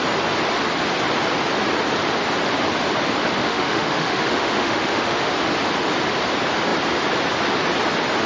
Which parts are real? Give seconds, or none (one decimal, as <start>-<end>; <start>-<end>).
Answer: 0.0-3.4; 5.3-8.3